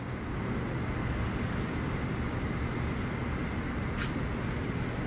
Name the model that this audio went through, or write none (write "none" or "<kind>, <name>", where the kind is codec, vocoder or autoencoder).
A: none